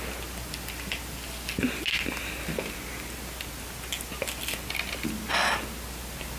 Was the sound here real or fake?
real